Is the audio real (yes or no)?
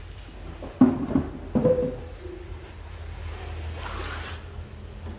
yes